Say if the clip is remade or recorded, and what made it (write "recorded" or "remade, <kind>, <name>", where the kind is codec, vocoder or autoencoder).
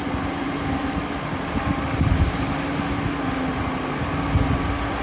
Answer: recorded